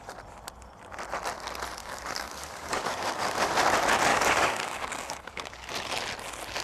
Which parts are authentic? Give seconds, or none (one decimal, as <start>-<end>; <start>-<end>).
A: 0.0-1.8; 3.5-4.1; 5.7-6.6